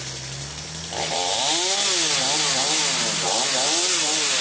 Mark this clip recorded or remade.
recorded